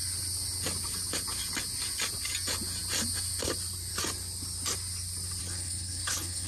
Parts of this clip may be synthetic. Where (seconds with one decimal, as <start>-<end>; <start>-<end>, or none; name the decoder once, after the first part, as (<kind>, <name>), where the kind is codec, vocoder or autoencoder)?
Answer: 5.4-6.5 (codec, HILCodec)